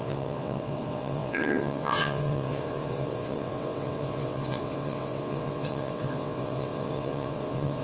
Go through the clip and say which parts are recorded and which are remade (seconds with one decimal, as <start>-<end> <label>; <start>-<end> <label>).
0.0-7.8 remade